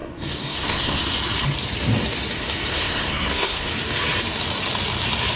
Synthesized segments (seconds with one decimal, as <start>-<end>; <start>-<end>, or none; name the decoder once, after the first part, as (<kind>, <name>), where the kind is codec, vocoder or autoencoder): 0.0-1.0 (codec, SNAC); 2.7-3.7